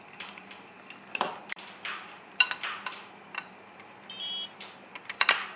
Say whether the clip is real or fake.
fake